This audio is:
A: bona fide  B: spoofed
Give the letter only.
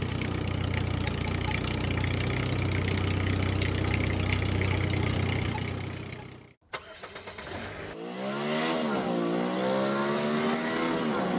A